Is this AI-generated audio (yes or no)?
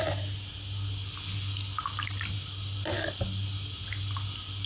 no